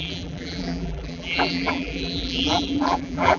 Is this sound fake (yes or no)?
yes